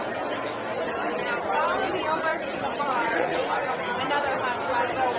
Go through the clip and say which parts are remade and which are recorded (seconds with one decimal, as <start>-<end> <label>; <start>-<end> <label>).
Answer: 0.0-2.3 recorded; 2.3-3.8 remade; 3.8-5.2 recorded